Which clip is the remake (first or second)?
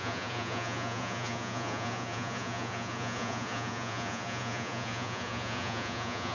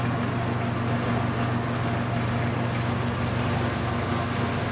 first